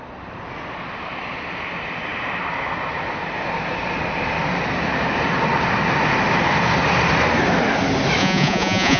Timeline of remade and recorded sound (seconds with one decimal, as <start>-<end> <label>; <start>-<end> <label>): 0.0-8.2 recorded; 8.2-9.0 remade